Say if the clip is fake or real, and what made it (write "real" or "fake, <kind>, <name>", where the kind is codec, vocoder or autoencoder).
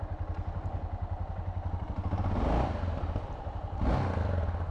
real